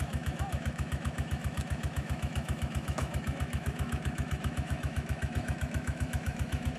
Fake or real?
fake